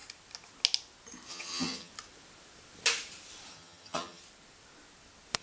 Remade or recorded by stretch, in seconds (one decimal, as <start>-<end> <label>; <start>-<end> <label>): 0.0-1.3 recorded; 1.3-1.9 remade; 1.9-3.5 recorded; 3.5-4.2 remade; 4.2-5.4 recorded